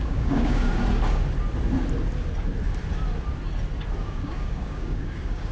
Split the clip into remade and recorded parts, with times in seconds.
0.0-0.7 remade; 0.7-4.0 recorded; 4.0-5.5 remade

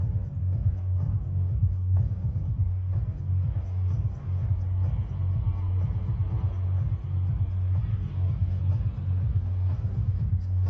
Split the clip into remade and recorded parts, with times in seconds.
0.0-0.4 recorded; 0.4-4.5 remade; 4.5-7.9 recorded; 7.9-8.6 remade; 8.6-9.3 recorded; 9.3-10.7 remade

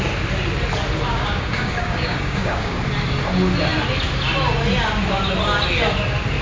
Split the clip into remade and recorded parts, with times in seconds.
0.0-1.1 recorded; 1.1-2.8 remade; 2.8-6.4 recorded